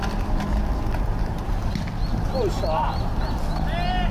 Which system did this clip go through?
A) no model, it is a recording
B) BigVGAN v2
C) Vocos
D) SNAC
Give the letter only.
A